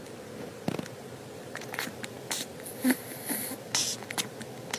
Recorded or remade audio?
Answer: recorded